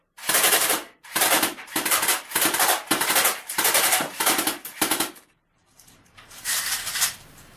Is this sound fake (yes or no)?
yes